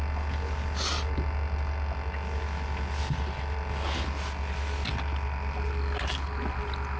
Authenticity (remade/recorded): recorded